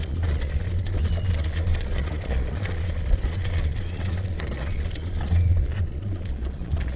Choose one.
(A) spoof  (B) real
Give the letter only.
A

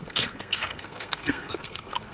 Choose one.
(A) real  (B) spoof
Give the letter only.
B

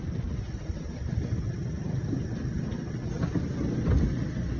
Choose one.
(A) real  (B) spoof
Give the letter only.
A